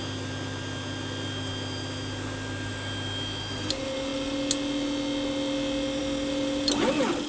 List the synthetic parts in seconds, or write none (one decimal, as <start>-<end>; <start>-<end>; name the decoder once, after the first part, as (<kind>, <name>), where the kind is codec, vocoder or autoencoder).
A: 0.0-4.1 (vocoder, BigVGAN v2); 6.0-7.3